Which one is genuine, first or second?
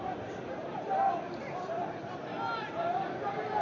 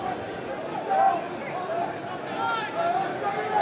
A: second